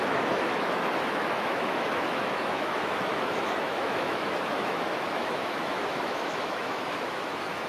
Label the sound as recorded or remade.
remade